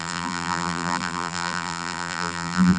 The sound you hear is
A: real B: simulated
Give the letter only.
B